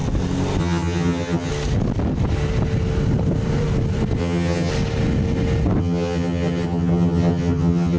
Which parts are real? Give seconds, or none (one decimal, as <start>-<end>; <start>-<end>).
0.0-0.6; 1.5-4.2; 4.7-5.8